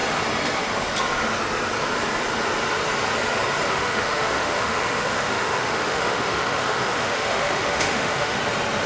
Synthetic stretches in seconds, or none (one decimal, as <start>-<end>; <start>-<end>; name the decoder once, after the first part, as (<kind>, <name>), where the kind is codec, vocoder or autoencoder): 3.7-8.4 (autoencoder, DAC-VAE)